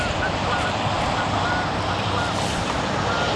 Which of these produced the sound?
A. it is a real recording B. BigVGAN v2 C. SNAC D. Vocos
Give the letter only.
A